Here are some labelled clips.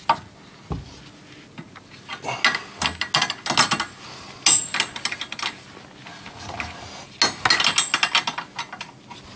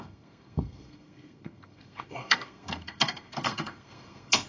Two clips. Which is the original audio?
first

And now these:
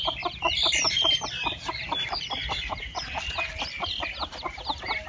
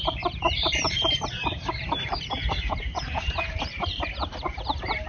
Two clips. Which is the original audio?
first